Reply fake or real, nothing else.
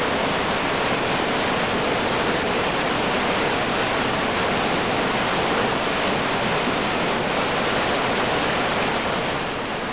real